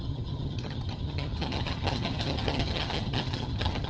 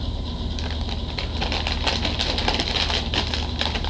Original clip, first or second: second